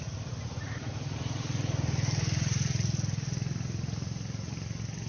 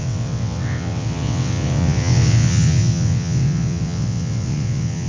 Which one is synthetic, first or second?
second